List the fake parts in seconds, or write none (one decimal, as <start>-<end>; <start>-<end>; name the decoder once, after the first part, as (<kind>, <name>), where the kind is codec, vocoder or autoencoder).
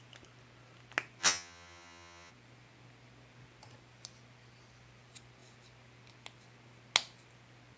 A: 1.2-2.3 (vocoder, HiFi-GAN)